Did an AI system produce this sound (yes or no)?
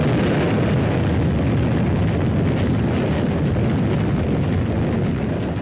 no